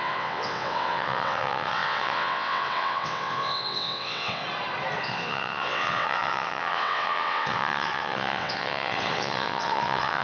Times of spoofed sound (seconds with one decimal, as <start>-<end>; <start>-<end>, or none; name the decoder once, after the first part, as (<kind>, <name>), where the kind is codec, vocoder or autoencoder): 0.0-4.4 (vocoder, WaveNeXt); 5.0-10.2